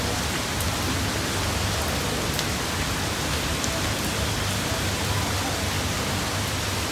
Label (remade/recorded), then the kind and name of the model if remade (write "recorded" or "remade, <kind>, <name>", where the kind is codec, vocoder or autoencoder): recorded